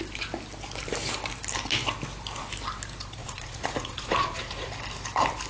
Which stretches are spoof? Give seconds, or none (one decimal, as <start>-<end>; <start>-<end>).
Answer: 3.2-4.7